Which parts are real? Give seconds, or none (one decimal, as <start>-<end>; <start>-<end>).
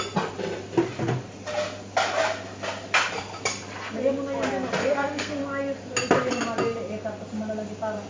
0.0-4.8; 5.3-8.1